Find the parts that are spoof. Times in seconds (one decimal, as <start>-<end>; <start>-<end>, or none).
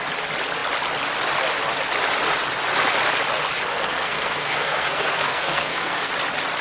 3.7-6.1